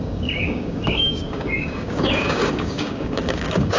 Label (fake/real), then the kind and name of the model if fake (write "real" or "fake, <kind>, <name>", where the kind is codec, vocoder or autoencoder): fake, codec, DAC